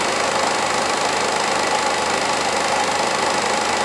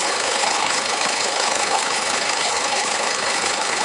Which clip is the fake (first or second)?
second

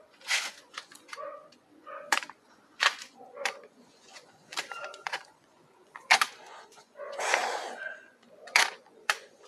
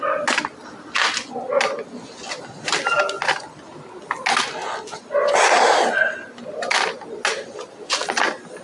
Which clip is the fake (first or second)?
first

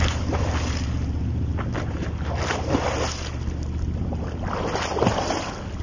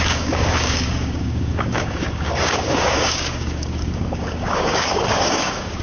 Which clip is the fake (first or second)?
second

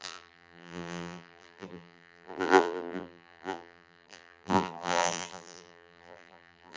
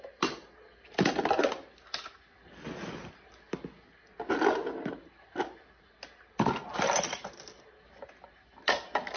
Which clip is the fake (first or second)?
first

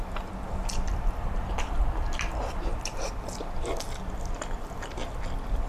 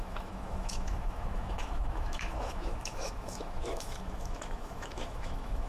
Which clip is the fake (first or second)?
second